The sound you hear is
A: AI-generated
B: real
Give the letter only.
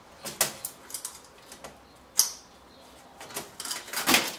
B